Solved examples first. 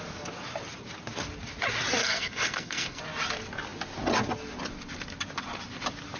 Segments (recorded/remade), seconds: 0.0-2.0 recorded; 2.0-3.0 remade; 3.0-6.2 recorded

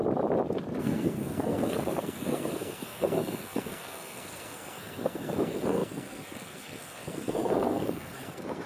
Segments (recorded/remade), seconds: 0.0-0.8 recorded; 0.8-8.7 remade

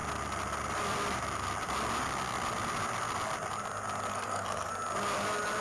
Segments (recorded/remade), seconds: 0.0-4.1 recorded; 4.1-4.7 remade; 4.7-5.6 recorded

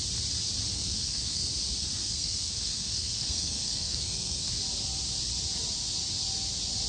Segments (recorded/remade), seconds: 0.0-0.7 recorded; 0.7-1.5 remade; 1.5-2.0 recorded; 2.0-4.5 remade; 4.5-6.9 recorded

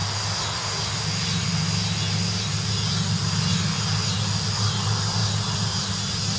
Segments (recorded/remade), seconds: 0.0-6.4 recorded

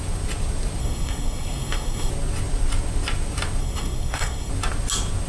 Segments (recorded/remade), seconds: 0.0-0.8 recorded; 0.8-2.1 remade; 2.1-3.6 recorded; 3.6-4.5 remade; 4.5-5.3 recorded

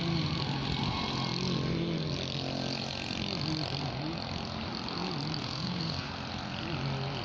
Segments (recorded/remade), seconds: 0.0-5.4 recorded; 5.4-6.1 remade; 6.1-7.2 recorded